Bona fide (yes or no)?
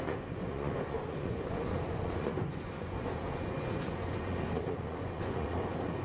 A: no